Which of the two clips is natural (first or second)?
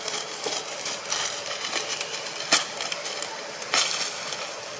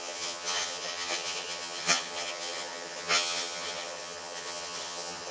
first